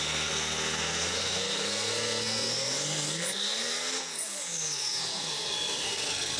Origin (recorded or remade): remade